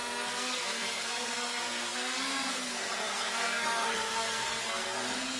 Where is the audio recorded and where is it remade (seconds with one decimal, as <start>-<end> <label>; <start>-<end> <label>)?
0.0-5.4 remade